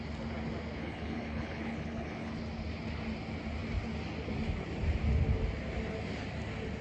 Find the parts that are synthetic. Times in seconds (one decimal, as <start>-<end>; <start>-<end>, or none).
0.8-2.3